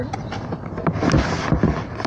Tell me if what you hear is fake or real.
real